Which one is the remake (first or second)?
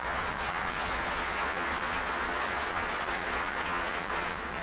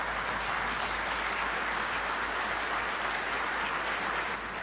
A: first